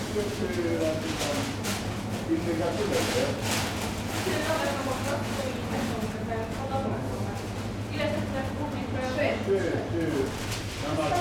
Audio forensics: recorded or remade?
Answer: recorded